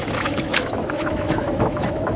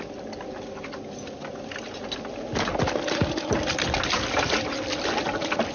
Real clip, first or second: second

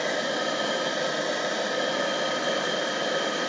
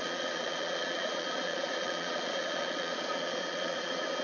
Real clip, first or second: first